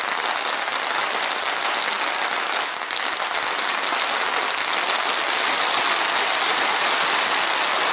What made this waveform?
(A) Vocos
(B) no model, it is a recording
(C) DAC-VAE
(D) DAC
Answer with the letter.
B